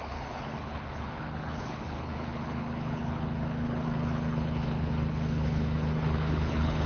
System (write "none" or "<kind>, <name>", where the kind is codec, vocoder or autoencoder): codec, HILCodec